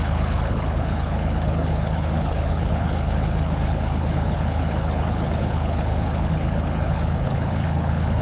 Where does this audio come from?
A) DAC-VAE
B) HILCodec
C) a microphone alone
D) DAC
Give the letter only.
B